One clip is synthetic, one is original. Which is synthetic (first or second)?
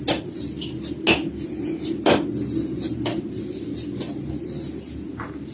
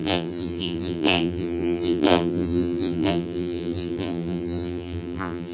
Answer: second